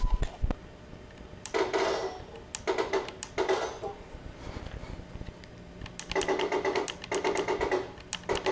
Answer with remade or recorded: recorded